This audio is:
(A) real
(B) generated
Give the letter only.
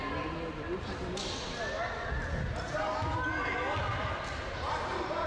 A